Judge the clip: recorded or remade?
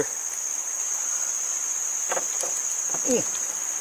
recorded